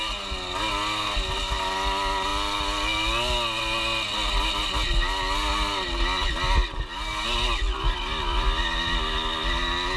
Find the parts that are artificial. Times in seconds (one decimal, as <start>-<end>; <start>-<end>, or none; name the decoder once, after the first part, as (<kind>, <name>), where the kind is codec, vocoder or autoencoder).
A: none